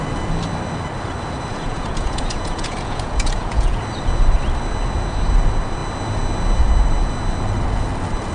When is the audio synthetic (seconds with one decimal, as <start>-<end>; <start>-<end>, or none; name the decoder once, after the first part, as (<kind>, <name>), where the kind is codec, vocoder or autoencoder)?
1.5-3.8 (vocoder, Vocos)

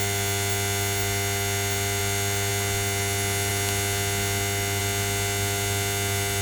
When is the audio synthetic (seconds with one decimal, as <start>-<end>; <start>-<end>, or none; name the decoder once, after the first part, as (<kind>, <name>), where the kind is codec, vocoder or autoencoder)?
none

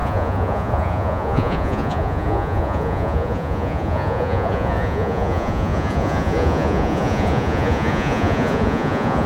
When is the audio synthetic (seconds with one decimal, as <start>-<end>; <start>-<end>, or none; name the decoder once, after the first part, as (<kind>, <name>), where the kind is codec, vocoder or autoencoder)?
0.0-9.3 (vocoder, Vocos)

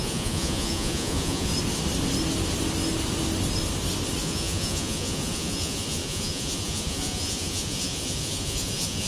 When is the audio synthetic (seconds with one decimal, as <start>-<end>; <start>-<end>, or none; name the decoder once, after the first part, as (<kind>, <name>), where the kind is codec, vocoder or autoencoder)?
0.0-1.5 (vocoder, Vocos); 4.2-9.1

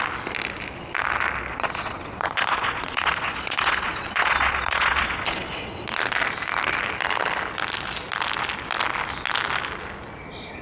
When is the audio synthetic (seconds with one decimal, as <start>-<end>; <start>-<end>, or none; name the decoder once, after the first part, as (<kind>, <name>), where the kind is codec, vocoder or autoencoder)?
1.5-5.8 (vocoder, Vocos)

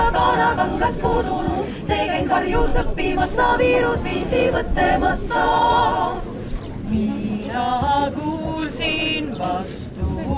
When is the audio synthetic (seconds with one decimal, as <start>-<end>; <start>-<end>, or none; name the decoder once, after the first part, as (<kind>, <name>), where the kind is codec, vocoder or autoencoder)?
0.7-1.8 (vocoder, Vocos); 4.1-6.6

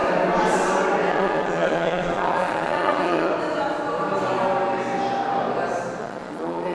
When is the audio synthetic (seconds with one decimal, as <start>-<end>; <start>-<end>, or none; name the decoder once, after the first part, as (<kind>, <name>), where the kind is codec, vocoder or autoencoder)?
1.1-3.3 (vocoder, Vocos); 6.0-6.7

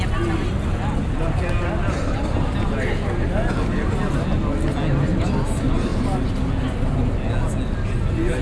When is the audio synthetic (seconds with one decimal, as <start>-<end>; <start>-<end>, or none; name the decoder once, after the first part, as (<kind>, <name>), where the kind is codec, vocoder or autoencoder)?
none